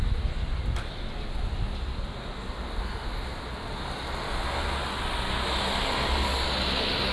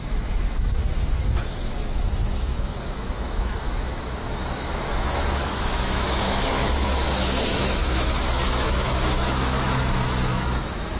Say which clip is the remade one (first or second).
second